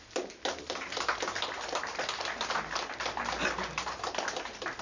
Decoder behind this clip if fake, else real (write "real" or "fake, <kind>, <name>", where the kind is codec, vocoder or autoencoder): real